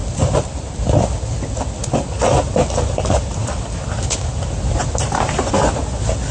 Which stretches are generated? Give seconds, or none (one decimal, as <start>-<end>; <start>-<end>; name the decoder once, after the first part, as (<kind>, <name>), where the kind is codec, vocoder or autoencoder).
none